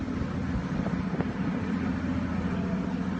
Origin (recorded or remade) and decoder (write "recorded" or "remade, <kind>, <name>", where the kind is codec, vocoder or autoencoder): recorded